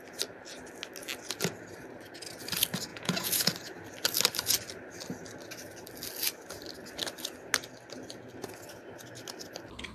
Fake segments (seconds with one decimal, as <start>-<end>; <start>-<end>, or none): 2.9-3.5

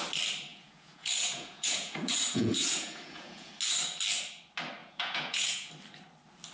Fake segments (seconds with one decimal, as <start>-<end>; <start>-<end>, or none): 0.5-3.5; 4.8-5.7